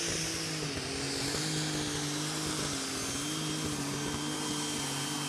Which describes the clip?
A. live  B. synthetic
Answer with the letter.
A